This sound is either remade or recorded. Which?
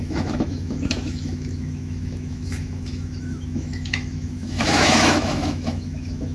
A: remade